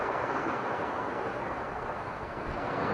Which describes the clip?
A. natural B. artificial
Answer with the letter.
B